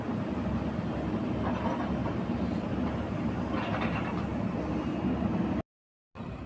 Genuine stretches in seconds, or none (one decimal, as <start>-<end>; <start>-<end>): 0.0-6.5